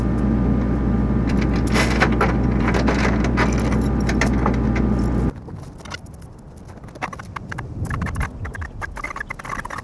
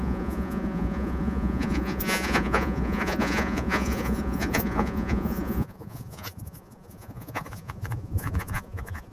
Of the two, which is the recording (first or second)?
first